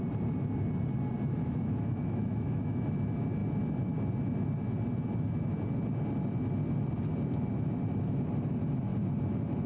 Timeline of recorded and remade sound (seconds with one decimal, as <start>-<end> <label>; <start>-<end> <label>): 0.0-1.3 recorded; 1.3-2.9 remade; 2.9-9.7 recorded